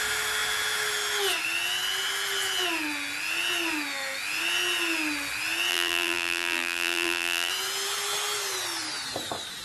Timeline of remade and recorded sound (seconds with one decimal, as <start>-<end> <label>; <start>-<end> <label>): 0.0-5.7 recorded; 5.7-7.5 remade; 7.5-9.6 recorded